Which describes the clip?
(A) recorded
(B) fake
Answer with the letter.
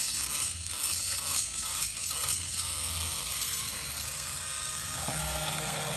B